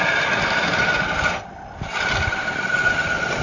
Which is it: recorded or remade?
recorded